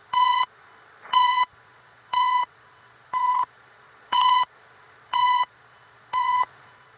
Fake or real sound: fake